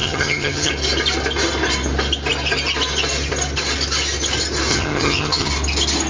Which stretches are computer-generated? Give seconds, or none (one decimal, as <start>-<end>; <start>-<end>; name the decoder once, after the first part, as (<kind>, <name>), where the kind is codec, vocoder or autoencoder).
0.0-0.7 (vocoder, HiFi-GAN); 4.7-5.5